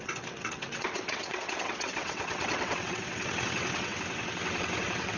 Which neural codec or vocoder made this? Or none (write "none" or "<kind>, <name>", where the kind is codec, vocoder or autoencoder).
vocoder, WaveNeXt